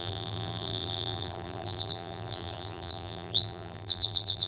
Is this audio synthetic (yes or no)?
yes